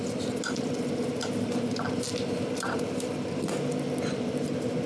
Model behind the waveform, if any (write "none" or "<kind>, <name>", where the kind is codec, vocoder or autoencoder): none